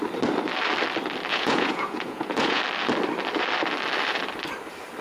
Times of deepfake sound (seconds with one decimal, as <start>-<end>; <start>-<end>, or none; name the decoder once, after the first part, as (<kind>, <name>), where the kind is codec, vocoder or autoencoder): 1.3-2.6 (vocoder, Vocos)